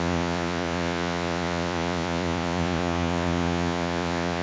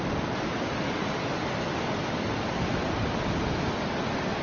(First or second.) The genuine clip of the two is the second